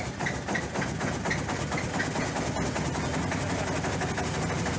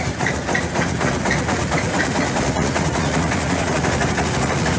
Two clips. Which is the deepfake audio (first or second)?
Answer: second